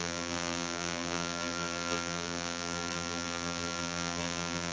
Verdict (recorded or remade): remade